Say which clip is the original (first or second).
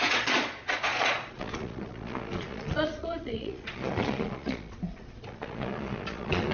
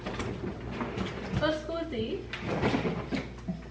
second